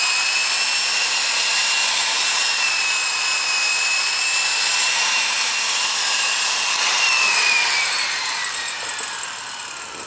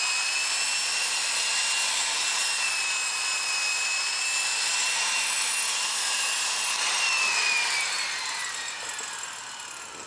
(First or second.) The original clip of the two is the second